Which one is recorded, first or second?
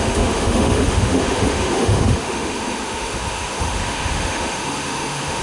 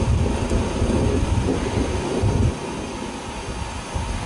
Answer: second